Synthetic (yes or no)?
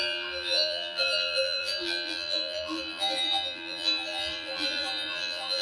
yes